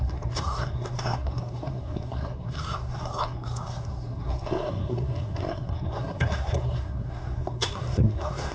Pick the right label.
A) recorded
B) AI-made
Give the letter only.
B